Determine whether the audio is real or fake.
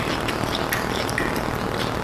real